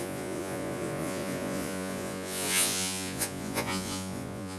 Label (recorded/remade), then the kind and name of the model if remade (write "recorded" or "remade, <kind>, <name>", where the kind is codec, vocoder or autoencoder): remade, vocoder, Vocos